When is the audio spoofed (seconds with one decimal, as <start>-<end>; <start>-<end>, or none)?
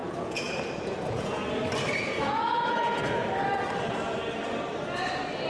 0.0-1.4; 2.0-3.0